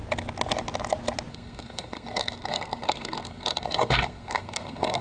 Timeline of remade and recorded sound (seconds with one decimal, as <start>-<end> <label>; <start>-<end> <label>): 0.0-1.3 recorded; 1.3-5.0 remade